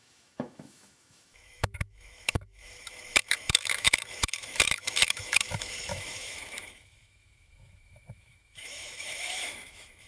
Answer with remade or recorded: remade